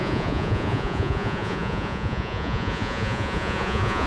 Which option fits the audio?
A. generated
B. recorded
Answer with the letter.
A